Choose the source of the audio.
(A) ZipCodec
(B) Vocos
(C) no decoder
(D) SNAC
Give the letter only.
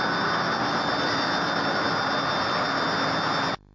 C